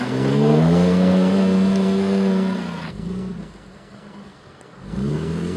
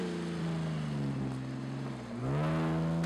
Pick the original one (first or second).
second